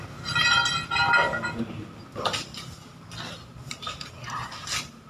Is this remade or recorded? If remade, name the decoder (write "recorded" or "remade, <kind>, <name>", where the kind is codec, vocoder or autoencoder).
recorded